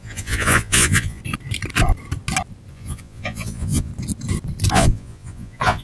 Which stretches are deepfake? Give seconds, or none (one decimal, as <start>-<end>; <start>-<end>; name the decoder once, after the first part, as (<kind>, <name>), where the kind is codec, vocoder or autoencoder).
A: 0.0-1.2 (vocoder, Vocos); 2.7-3.9; 4.7-5.8